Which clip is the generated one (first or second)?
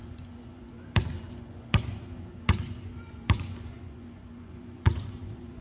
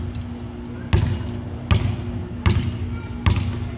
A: first